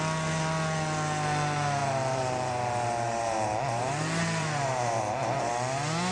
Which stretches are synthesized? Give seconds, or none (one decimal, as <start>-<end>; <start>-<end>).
1.8-5.5